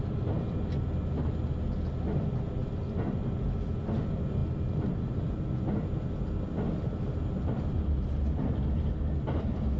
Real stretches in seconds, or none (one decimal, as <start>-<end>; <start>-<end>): 0.0-9.8